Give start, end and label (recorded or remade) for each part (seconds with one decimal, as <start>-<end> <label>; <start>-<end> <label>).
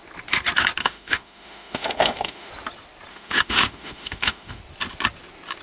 0.0-0.8 recorded; 0.8-2.5 remade; 2.5-3.1 recorded; 3.1-4.6 remade; 4.6-5.6 recorded